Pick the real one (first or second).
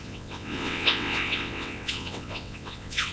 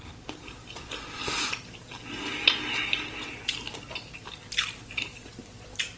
second